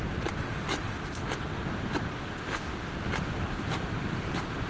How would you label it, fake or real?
real